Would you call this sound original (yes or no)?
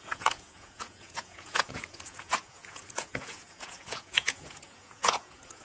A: no